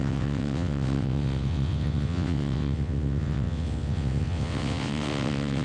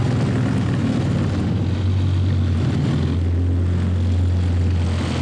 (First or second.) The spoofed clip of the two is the first